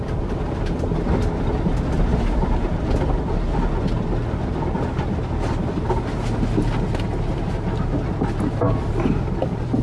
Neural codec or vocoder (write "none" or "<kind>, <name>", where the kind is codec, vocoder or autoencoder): none